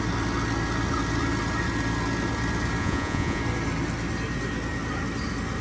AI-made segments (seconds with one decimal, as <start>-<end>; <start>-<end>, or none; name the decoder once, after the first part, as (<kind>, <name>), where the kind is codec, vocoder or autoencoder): 2.8-3.4 (vocoder, Vocos)